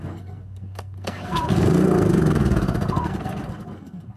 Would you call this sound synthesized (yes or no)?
yes